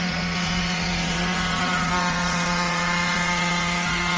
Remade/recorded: remade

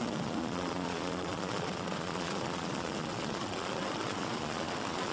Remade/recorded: remade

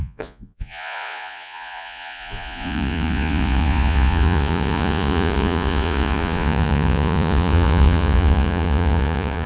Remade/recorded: remade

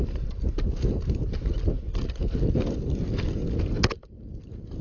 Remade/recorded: recorded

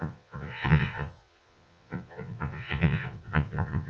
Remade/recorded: remade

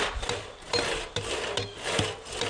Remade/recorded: recorded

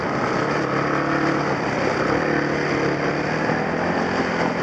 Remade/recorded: recorded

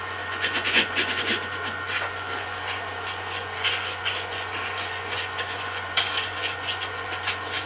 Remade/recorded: remade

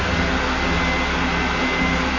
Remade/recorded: recorded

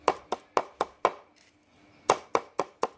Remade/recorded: recorded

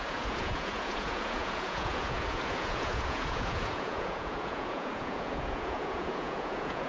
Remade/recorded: remade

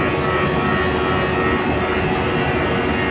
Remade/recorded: recorded